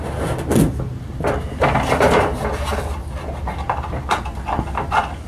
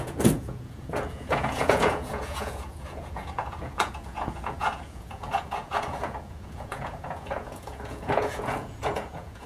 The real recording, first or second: first